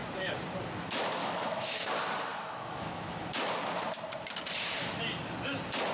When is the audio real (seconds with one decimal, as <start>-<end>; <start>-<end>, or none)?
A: 0.0-1.2; 1.9-2.3; 3.3-5.9